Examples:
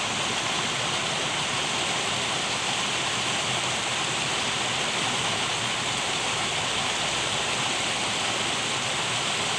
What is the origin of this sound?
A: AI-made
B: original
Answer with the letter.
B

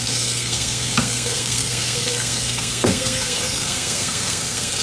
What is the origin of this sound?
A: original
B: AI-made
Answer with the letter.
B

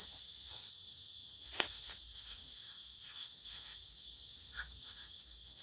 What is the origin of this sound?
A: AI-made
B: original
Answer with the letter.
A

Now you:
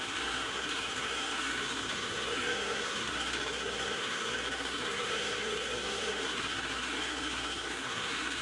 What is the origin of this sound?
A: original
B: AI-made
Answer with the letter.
B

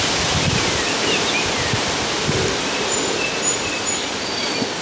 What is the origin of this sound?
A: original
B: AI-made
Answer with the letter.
A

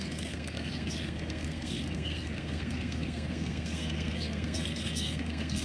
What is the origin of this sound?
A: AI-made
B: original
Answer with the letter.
A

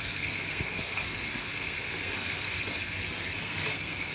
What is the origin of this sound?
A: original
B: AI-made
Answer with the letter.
B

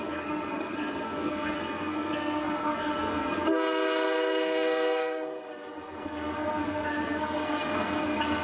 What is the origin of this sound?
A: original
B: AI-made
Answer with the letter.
B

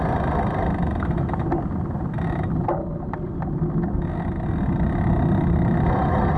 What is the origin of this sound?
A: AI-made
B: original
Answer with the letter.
B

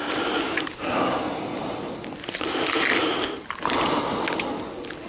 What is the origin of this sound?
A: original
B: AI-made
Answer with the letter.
A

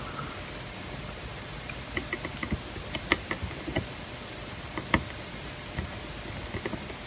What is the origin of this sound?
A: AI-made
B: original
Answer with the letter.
B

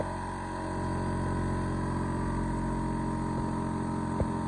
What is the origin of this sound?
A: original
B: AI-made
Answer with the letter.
A